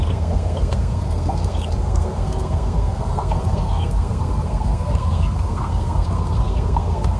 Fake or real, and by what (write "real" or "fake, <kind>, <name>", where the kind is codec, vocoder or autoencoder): fake, codec, SNAC